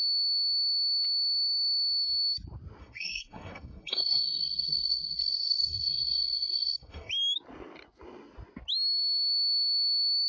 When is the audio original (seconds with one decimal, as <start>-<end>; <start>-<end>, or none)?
0.0-2.8; 7.1-10.3